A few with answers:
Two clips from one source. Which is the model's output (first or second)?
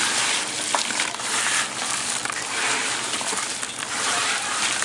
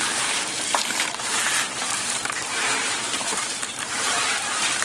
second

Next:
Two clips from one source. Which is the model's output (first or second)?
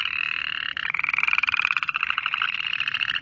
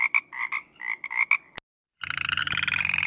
first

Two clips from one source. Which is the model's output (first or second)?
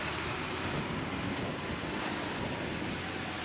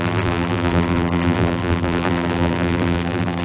second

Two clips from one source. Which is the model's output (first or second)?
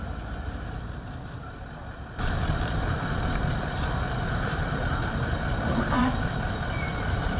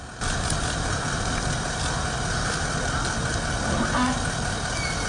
first